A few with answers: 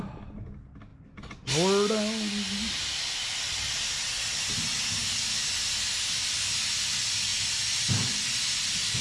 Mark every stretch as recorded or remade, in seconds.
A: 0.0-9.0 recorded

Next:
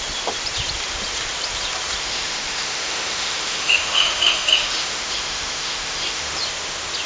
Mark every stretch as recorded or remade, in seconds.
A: 0.0-2.0 recorded; 2.0-6.3 remade; 6.3-7.1 recorded